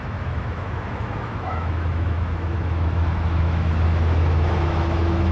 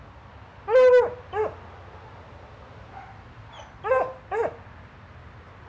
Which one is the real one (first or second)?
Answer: second